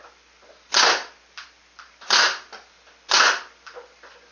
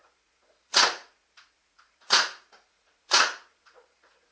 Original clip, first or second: first